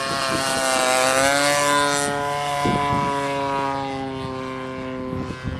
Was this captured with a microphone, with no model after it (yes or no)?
yes